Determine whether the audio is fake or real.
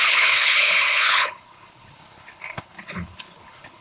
fake